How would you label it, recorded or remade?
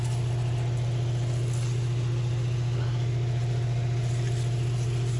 recorded